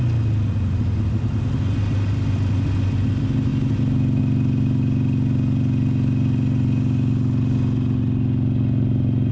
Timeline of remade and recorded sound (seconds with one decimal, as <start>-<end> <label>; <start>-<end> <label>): 0.0-9.3 recorded